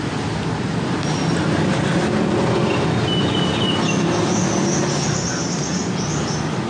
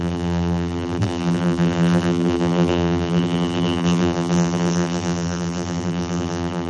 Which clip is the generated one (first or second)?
second